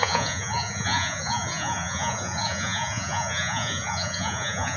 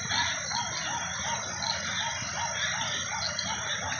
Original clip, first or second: second